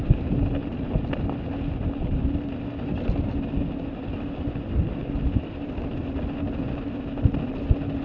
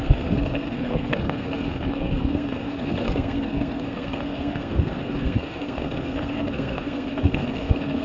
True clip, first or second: first